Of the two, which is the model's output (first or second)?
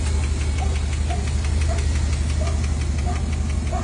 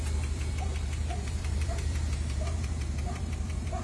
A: second